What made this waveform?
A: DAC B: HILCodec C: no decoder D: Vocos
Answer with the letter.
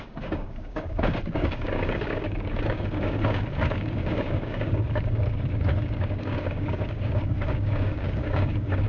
A